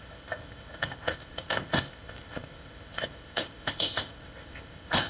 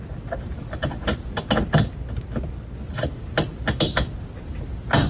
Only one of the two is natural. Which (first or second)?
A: second